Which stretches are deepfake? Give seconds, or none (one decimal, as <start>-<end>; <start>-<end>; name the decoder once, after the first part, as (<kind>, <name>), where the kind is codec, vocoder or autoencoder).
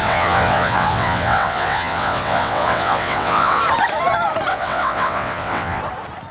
0.0-3.6 (vocoder, WaveNeXt); 4.5-5.8